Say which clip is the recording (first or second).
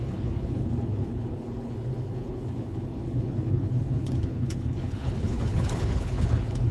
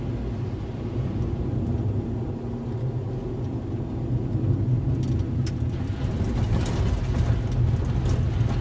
second